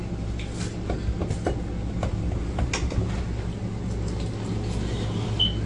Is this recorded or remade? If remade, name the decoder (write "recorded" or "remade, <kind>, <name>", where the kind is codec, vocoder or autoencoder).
recorded